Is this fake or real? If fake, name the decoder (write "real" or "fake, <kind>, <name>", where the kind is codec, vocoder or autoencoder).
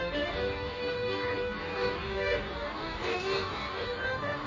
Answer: fake, codec, DAC